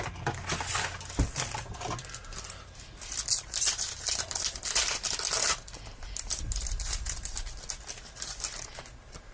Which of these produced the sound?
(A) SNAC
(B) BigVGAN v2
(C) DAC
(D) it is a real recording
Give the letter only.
D